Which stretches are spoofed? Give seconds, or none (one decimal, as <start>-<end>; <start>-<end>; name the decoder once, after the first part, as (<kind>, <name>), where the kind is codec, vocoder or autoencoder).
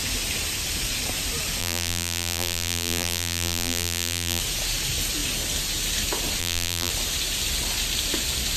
1.6-4.4 (vocoder, BigVGAN v2); 6.4-6.9